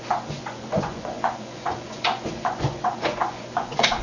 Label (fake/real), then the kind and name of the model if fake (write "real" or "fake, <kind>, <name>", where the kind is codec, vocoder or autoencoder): fake, vocoder, Vocos